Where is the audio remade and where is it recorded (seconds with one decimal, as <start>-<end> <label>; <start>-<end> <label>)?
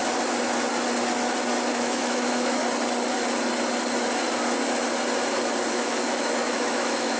0.0-1.7 recorded; 1.7-2.6 remade; 2.6-5.7 recorded; 5.7-7.2 remade